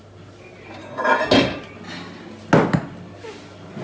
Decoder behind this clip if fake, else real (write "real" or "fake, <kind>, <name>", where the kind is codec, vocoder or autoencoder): real